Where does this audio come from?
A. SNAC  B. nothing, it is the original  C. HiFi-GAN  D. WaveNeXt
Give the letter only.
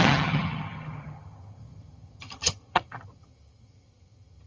C